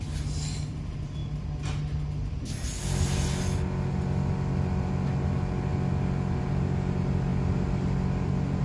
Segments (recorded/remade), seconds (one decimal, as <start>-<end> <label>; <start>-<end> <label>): 0.0-8.6 recorded